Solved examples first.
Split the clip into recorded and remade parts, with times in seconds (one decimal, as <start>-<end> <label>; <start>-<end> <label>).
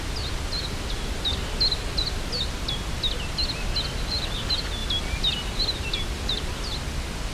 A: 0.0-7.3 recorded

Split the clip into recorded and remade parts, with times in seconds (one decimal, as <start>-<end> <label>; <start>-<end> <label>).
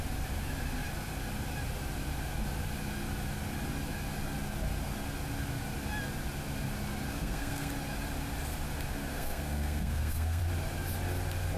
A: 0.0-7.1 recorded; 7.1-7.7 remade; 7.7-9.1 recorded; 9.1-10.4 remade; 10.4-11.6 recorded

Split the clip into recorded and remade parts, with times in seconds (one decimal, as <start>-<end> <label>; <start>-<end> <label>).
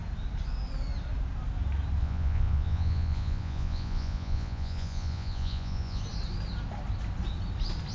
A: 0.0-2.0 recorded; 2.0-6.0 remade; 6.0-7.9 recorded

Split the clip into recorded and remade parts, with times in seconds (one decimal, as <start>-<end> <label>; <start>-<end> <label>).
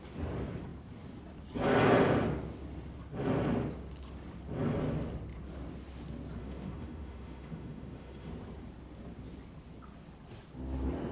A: 0.0-6.4 recorded; 6.4-8.3 remade; 8.3-11.1 recorded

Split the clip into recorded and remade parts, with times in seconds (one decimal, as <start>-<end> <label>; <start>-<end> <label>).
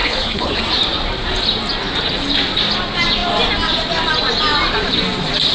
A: 0.0-0.6 remade; 0.6-5.5 recorded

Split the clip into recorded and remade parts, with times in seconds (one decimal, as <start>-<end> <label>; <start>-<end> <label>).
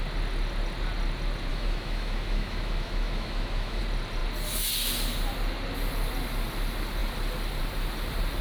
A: 0.0-1.5 recorded; 1.5-3.8 remade; 3.8-8.4 recorded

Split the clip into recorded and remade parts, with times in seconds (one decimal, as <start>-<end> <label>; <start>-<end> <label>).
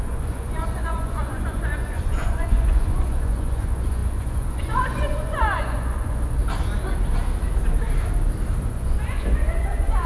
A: 0.0-6.4 remade; 6.4-8.7 recorded; 8.7-10.1 remade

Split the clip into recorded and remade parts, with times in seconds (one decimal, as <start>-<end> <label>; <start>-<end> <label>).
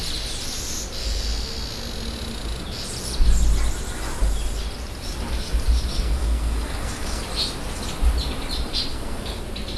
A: 0.0-5.9 recorded; 5.9-7.2 remade; 7.2-8.9 recorded; 8.9-9.4 remade; 9.4-9.8 recorded